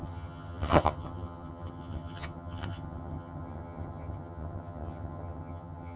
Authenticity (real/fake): fake